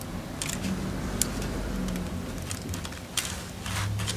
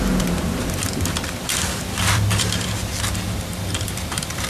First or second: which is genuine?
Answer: first